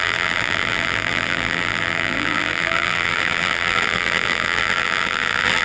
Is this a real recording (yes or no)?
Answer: no